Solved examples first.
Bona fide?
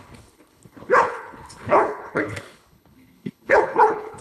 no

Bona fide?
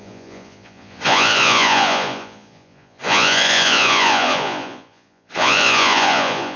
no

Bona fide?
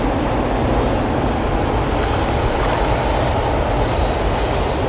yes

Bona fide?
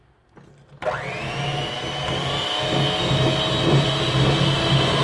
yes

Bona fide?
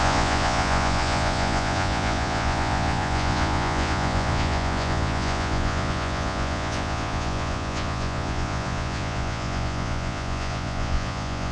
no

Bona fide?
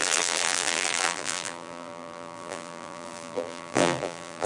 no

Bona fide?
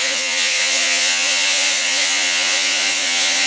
no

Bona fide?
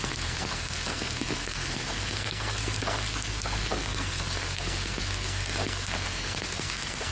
no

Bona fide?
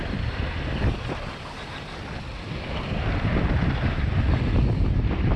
yes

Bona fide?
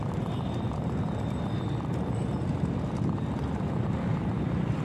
yes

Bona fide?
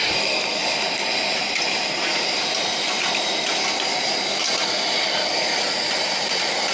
no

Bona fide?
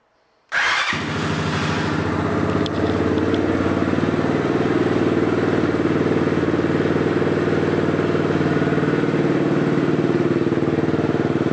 yes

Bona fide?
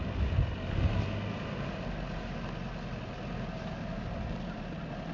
yes